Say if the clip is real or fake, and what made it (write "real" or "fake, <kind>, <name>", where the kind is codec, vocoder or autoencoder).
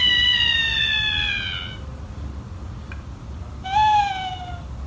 real